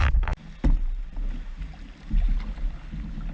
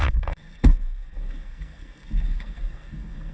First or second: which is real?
first